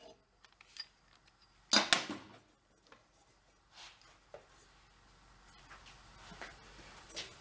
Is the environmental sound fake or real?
real